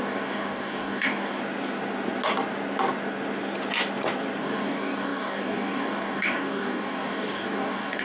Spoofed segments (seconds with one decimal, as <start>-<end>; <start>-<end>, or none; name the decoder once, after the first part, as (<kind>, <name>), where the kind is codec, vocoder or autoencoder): 0.0-1.4 (codec, DAC); 4.4-8.0